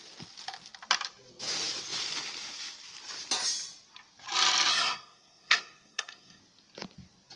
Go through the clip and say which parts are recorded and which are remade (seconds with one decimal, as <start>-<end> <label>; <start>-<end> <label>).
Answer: 0.0-4.7 recorded; 4.7-6.4 remade; 6.4-7.4 recorded